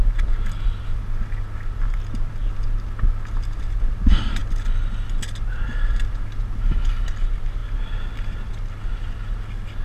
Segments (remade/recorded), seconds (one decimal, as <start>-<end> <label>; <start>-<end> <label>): 0.0-9.8 recorded

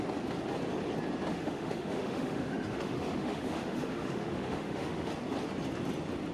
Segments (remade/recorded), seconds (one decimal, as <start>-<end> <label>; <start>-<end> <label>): 0.0-1.3 recorded; 1.3-5.1 remade; 5.1-6.3 recorded

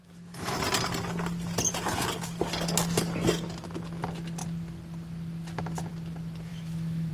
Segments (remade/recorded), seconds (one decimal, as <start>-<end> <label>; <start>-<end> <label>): 0.0-0.6 remade; 0.6-6.5 recorded; 6.5-7.1 remade

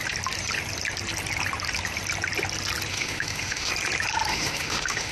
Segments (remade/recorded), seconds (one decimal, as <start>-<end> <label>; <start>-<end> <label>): 0.0-2.9 recorded; 2.9-3.7 remade; 3.7-4.3 recorded; 4.3-5.1 remade

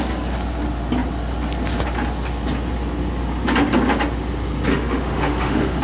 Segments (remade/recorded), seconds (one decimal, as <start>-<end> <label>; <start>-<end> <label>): 0.0-4.7 recorded; 4.7-5.8 remade

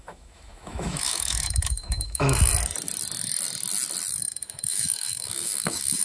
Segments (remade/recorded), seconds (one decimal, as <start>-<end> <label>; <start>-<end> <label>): 0.0-2.5 remade; 2.5-4.2 recorded; 4.2-6.0 remade

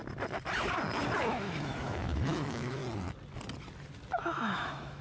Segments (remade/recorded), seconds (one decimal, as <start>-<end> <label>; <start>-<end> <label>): 0.0-1.2 recorded; 1.2-2.8 remade; 2.8-4.2 recorded; 4.2-5.0 remade